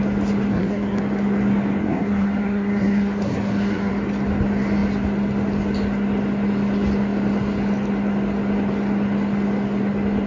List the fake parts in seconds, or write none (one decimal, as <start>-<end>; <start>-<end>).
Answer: 0.5-1.0; 1.8-3.9